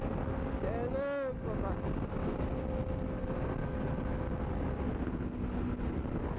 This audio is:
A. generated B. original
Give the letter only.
B